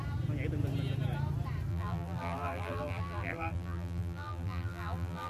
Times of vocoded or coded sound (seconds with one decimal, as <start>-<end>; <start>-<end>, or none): 1.7-5.3

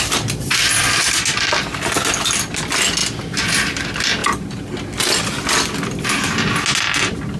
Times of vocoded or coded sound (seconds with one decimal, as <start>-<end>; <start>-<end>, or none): none